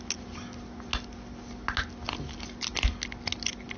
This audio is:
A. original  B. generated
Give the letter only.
A